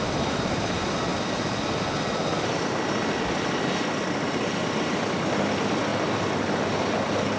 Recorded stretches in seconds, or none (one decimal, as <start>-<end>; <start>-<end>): 0.0-5.9